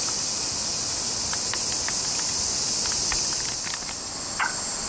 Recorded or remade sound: recorded